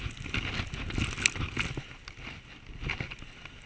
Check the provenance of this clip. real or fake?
real